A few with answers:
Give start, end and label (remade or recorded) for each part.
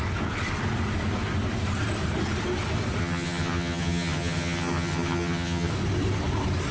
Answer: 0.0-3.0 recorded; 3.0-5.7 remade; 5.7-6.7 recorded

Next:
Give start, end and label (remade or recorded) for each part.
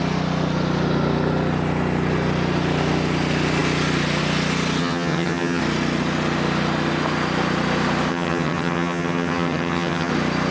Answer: 0.0-4.8 recorded; 4.8-5.6 remade; 5.6-8.1 recorded; 8.1-10.1 remade; 10.1-10.5 recorded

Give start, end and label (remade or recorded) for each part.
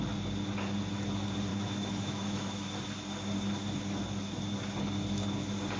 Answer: 0.0-1.5 recorded; 1.5-2.4 remade; 2.4-5.8 recorded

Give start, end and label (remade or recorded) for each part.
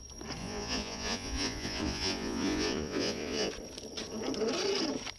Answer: 0.0-0.4 recorded; 0.4-3.5 remade; 3.5-5.2 recorded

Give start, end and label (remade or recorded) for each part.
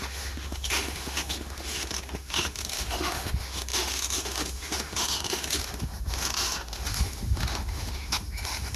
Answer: 0.0-8.8 remade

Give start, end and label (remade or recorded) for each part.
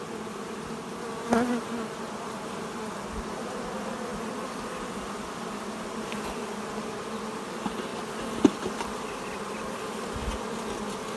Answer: 0.0-11.2 recorded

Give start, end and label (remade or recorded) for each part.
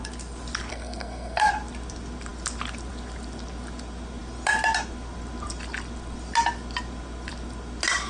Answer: 0.0-0.7 recorded; 0.7-1.5 remade; 1.5-8.1 recorded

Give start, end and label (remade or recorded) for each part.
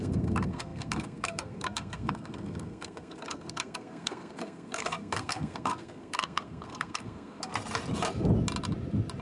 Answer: 0.0-7.5 remade; 7.5-9.2 recorded